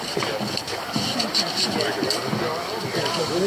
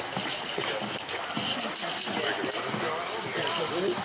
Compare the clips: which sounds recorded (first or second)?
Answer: second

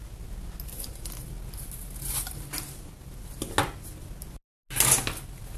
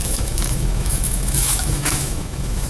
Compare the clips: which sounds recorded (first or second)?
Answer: first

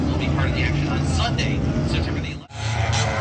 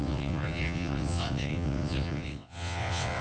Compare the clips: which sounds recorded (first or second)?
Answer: first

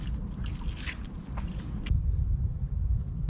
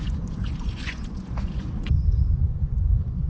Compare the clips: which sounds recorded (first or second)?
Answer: first